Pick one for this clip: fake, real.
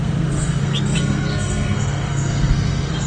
fake